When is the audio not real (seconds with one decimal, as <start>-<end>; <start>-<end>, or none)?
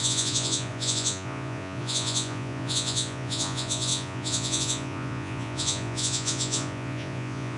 0.0-7.6